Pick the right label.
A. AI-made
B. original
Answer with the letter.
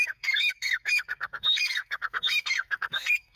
A